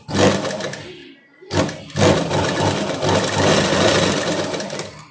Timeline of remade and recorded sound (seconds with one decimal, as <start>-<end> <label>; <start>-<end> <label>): 0.0-5.1 recorded

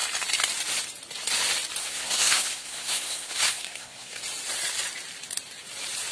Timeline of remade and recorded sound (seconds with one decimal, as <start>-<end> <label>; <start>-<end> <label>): 0.0-1.8 recorded; 1.8-4.2 remade; 4.2-6.1 recorded

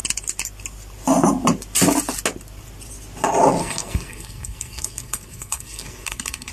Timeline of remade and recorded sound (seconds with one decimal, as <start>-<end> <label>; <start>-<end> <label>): 0.0-3.6 recorded; 3.6-6.5 remade

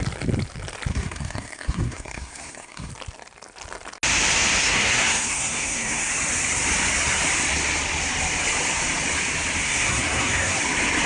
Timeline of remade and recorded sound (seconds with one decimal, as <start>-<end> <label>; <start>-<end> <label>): 0.0-0.9 recorded; 0.9-2.9 remade; 2.9-4.6 recorded; 4.6-6.1 remade; 6.1-9.6 recorded; 9.6-10.6 remade; 10.6-11.1 recorded

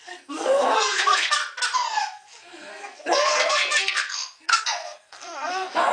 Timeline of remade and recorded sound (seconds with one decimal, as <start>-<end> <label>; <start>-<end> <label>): 0.0-1.4 remade; 1.4-2.0 recorded; 2.0-5.9 remade

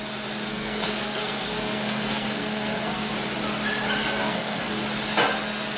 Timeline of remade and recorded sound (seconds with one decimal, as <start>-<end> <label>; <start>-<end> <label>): 0.0-0.5 recorded; 0.5-3.1 remade; 3.1-4.0 recorded; 4.0-4.7 remade; 4.7-5.8 recorded

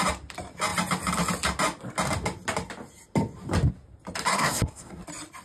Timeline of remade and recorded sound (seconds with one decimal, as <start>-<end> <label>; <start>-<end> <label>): 0.0-4.3 recorded; 4.3-5.0 remade; 5.0-5.4 recorded